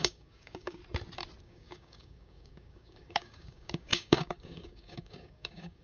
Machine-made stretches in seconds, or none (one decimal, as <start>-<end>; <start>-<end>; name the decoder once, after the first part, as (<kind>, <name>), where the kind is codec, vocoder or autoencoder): 0.0-0.8 (codec, DAC); 1.4-5.8